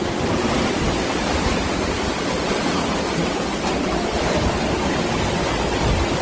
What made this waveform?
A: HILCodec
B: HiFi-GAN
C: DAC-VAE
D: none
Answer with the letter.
D